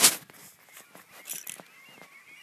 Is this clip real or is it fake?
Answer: real